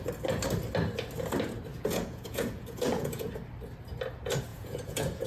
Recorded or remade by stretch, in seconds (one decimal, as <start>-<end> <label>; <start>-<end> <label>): 0.0-1.7 recorded; 1.7-3.3 remade; 3.3-4.5 recorded; 4.5-5.3 remade